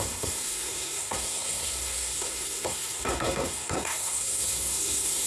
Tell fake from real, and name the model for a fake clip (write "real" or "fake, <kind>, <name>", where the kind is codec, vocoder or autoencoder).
fake, codec, SNAC